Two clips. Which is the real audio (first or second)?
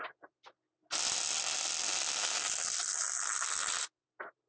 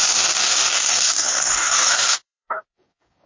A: first